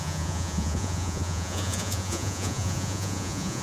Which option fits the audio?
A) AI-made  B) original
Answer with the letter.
A